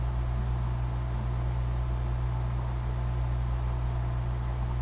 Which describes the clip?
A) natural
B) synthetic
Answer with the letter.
A